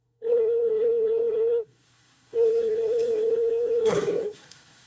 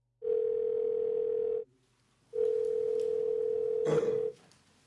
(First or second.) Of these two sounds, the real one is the second